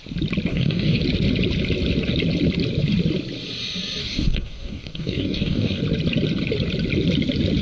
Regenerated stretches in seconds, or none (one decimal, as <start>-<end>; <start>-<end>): 0.5-1.0; 4.0-5.8